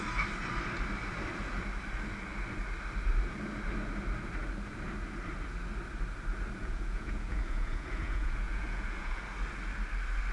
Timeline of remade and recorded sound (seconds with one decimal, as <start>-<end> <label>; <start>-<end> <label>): 0.0-6.6 recorded; 6.6-9.2 remade; 9.2-10.3 recorded